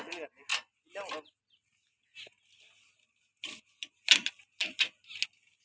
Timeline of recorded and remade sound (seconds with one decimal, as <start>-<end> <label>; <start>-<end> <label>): 0.0-5.6 recorded